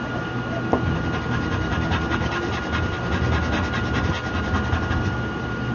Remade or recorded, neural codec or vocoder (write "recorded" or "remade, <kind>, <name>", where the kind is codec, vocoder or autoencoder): recorded